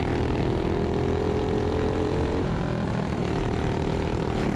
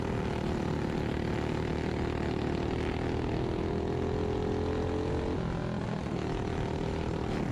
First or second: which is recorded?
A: second